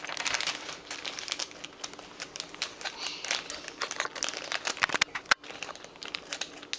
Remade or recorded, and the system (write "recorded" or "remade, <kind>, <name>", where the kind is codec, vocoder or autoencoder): recorded